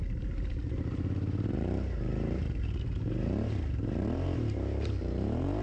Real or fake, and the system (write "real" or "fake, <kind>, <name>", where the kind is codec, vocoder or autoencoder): fake, vocoder, BigVGAN v2